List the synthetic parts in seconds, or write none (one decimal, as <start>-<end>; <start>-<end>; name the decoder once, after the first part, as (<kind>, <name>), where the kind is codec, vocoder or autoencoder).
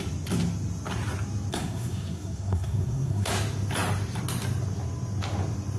1.5-3.3 (codec, SNAC)